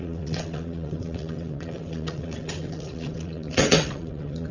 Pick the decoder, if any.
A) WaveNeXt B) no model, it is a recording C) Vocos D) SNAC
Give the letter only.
A